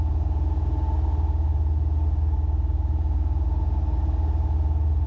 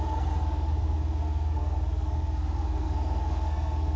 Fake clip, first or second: second